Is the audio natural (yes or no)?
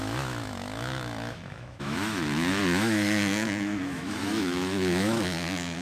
no